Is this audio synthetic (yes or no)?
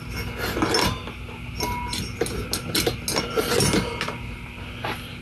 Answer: no